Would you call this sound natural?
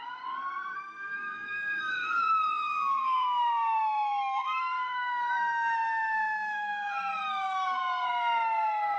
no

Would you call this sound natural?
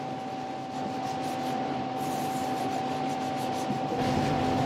yes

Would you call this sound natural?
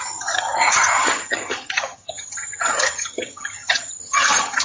no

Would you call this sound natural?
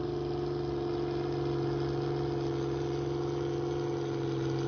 yes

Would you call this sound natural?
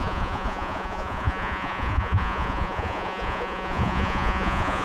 no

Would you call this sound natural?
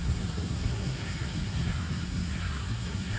no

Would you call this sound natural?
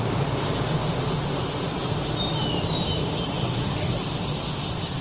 yes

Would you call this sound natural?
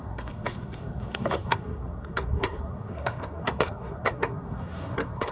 no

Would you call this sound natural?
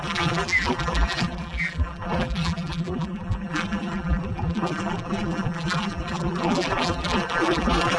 no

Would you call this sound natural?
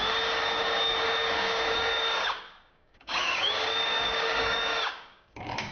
no